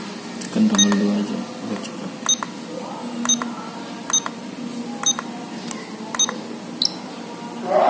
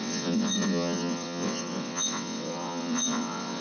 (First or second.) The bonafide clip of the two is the first